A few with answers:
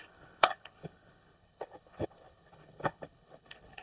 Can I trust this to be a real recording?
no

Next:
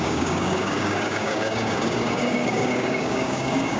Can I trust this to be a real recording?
no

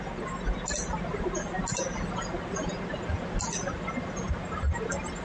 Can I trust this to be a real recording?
yes